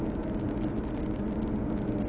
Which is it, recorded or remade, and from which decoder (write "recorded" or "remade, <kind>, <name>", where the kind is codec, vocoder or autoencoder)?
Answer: recorded